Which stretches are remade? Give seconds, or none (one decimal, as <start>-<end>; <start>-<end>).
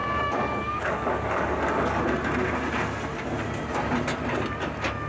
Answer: 0.0-2.0